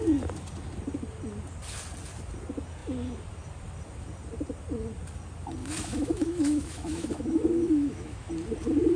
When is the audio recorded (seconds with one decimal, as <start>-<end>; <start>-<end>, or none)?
0.0-5.6; 8.3-9.0